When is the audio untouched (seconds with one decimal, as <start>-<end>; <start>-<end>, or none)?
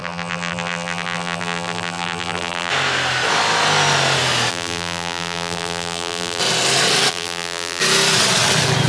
2.7-4.5; 6.4-7.1; 7.8-8.9